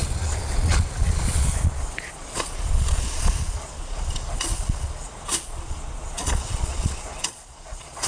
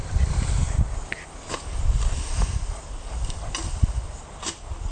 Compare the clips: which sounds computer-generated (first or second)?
first